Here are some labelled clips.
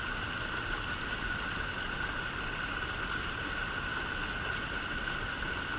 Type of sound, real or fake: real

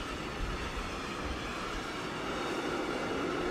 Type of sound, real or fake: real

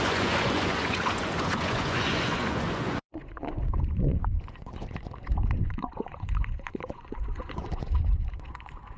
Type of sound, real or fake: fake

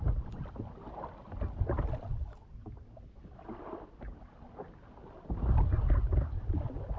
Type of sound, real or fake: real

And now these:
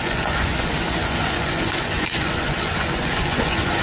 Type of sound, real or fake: fake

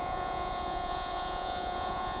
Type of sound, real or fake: fake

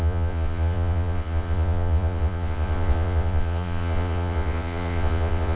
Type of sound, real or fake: fake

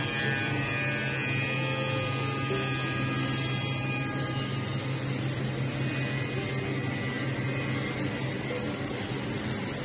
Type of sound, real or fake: real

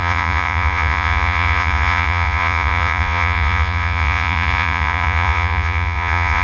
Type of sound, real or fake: fake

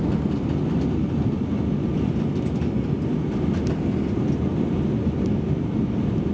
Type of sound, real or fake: real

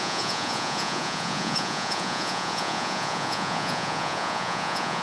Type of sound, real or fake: fake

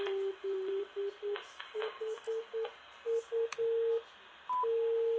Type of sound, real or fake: real